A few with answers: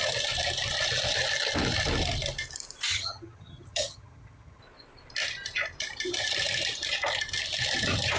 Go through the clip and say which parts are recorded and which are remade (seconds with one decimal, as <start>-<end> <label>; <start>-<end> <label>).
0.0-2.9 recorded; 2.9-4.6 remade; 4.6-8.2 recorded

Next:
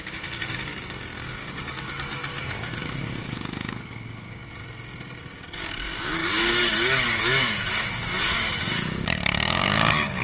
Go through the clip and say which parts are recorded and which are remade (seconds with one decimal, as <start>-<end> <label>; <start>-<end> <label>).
0.0-4.4 remade; 4.4-5.2 recorded; 5.2-10.2 remade

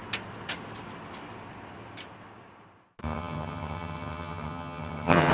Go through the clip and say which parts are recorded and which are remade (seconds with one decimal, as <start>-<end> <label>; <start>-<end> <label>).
0.0-3.0 recorded; 3.0-5.3 remade

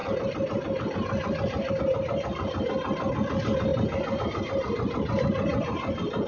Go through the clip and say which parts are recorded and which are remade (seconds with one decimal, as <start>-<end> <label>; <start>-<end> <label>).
0.0-6.3 recorded

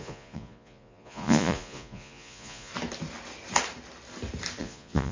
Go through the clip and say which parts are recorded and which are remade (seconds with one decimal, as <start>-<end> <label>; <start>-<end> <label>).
0.0-2.7 remade; 2.7-4.6 recorded; 4.6-5.1 remade